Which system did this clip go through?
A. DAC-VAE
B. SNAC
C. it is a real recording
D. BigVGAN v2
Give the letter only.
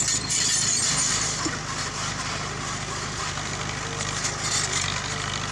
C